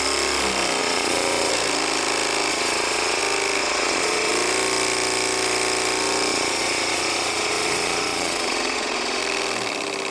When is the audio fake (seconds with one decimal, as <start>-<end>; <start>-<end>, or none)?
0.8-1.5; 2.5-3.2; 3.6-4.3; 6.3-9.2